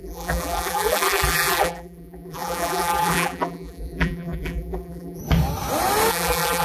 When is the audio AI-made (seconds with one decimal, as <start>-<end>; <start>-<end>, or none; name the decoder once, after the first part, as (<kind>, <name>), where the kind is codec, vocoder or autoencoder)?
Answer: 0.0-5.2 (vocoder, BigVGAN v2); 6.1-6.6